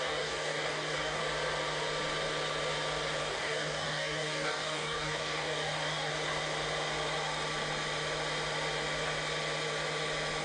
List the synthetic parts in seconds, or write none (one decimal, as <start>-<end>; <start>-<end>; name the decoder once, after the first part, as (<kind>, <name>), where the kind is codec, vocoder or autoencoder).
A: 0.0-1.2 (codec, DAC); 3.2-6.1